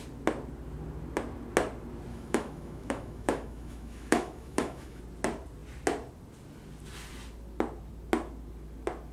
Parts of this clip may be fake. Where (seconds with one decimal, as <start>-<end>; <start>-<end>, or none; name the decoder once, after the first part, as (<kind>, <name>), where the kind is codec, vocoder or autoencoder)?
2.1-5.0 (autoencoder, DAC-VAE)